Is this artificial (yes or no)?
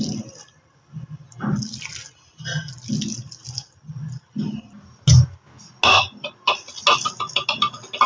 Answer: no